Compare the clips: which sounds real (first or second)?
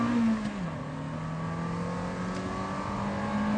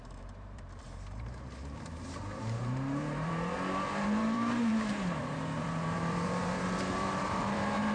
first